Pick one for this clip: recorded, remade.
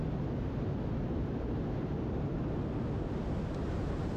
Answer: recorded